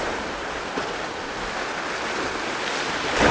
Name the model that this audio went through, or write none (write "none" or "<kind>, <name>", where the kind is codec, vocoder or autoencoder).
none